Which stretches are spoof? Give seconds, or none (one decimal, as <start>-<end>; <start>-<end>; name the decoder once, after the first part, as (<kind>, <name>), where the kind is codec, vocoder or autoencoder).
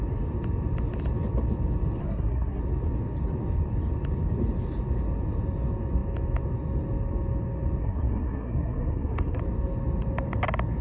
2.0-2.6 (codec, SNAC); 7.8-9.4